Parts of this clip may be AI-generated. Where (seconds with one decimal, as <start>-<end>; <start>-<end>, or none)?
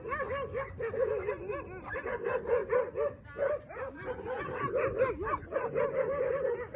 none